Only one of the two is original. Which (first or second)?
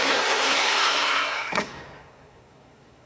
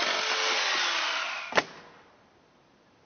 second